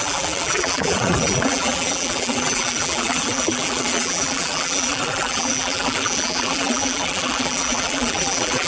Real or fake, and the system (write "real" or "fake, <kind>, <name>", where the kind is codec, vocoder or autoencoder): fake, vocoder, BigVGAN v2